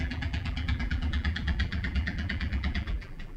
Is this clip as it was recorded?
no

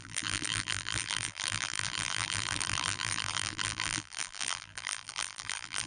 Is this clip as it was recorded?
no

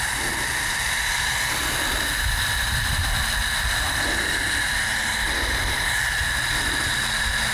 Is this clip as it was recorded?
yes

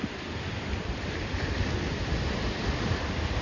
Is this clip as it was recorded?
no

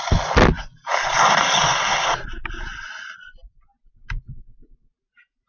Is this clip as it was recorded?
yes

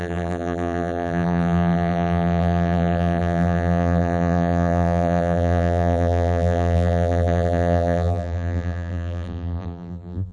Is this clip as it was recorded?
no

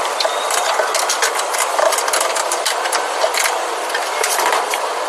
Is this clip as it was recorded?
no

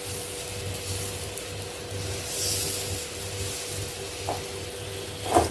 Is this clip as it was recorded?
yes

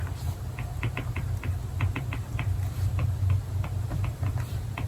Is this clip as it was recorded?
no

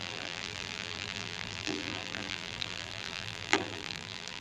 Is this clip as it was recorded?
no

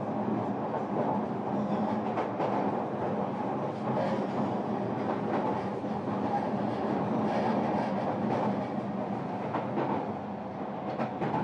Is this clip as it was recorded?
yes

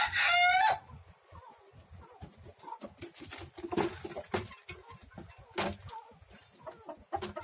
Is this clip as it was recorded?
yes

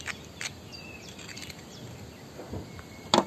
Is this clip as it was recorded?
yes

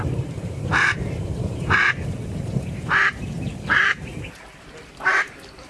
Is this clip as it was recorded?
no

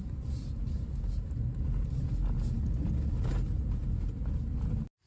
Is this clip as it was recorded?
yes